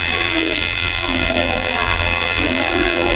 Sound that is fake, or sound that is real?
fake